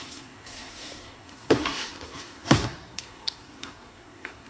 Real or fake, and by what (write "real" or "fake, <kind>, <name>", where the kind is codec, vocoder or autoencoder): fake, codec, SNAC